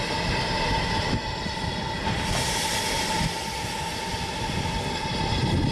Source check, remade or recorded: recorded